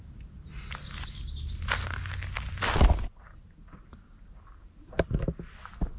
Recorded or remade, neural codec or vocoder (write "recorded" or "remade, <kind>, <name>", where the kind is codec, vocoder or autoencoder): recorded